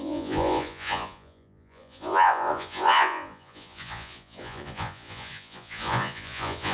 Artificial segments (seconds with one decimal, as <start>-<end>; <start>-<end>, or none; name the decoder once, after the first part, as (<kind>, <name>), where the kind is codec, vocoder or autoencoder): 0.0-6.7 (vocoder, Vocos)